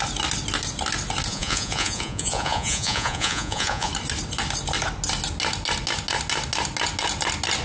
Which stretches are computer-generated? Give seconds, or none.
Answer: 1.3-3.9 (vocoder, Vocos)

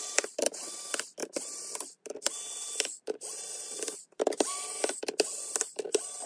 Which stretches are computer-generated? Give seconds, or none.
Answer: none

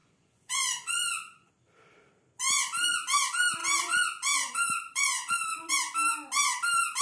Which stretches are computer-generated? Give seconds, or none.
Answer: 0.0-1.5 (vocoder, Vocos); 3.6-5.7

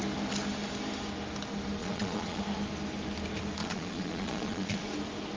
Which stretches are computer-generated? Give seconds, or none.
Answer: 1.8-2.4 (vocoder, Vocos); 3.6-4.8

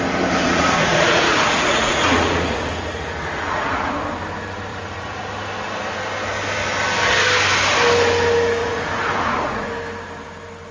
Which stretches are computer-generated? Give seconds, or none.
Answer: 0.4-3.9 (vocoder, Vocos); 4.7-5.3; 8.6-9.7

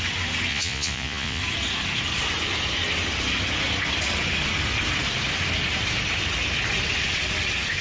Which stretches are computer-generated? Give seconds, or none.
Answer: 0.5-1.4 (vocoder, Vocos)

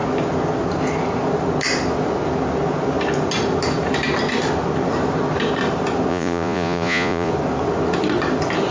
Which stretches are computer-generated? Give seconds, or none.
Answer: 6.1-7.3 (vocoder, Vocos)

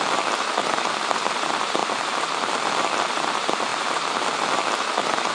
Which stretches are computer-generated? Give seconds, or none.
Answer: none